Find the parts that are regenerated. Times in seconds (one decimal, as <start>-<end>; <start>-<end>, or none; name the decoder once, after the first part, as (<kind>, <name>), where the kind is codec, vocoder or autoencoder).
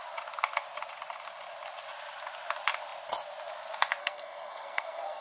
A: 4.0-5.2 (codec, SNAC)